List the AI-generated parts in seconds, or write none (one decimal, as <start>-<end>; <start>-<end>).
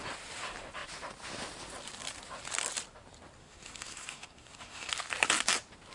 3.4-4.9